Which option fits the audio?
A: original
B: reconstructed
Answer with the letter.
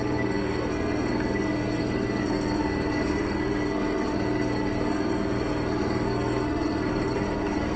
B